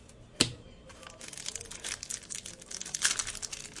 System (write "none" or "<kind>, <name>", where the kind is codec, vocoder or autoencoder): none